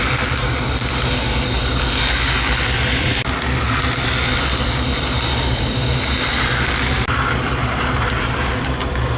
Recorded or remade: recorded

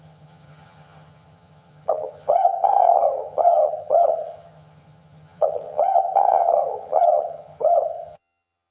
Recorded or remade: remade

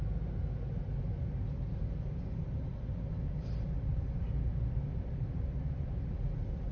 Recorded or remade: recorded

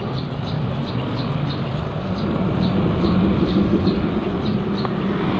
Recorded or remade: recorded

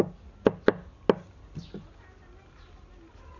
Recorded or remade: recorded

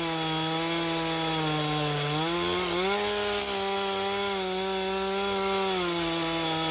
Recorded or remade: recorded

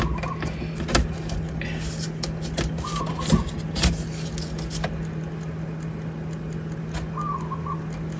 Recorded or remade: recorded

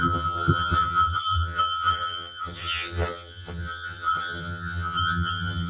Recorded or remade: remade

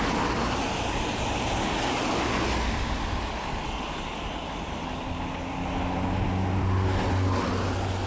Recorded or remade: recorded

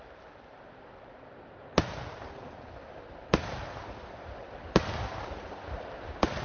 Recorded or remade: recorded